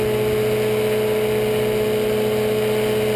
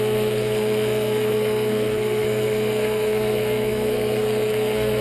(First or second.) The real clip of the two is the first